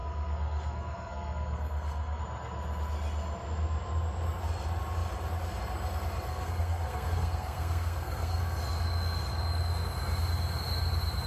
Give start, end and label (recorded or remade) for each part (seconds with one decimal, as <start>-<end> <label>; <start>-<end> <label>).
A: 0.0-2.2 remade; 2.2-6.3 recorded; 6.3-8.4 remade; 8.4-11.3 recorded